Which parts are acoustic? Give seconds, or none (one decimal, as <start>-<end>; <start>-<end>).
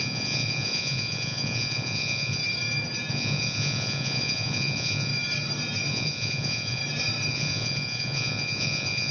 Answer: 2.4-3.1; 5.1-5.9; 6.8-7.3